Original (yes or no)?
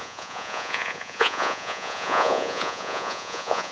no